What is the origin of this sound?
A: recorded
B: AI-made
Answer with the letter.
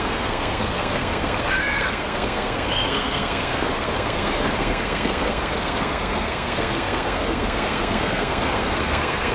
B